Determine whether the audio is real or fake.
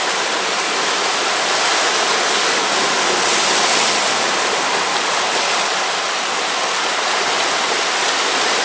real